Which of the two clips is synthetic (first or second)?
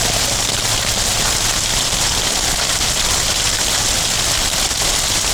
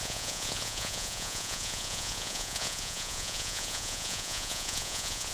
second